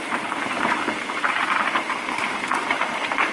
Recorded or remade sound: remade